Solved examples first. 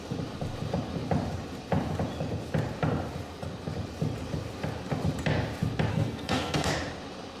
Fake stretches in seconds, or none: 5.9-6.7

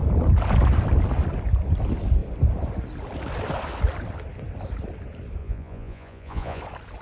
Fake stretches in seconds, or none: 5.4-6.6

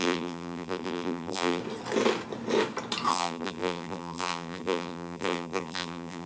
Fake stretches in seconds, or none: 0.0-1.6; 3.1-6.3

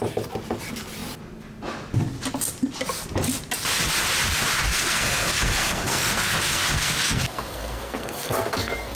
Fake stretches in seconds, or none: 4.7-9.0

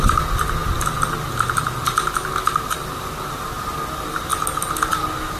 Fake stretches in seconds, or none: none

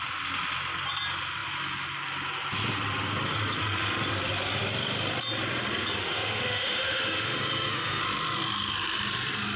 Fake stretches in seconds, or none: 6.0-8.0

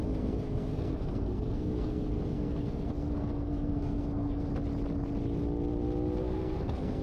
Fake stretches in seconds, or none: 0.0-4.5; 6.2-7.0